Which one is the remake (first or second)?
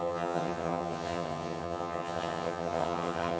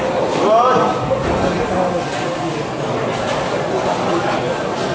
first